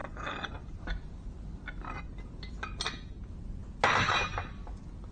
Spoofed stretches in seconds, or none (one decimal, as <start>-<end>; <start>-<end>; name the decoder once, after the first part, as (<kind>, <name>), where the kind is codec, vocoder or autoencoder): none